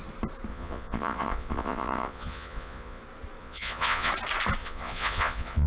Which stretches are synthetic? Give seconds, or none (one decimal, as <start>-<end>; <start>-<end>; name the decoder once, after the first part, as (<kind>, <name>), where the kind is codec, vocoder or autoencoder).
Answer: 0.5-3.0 (vocoder, Vocos); 3.4-4.1; 4.6-5.7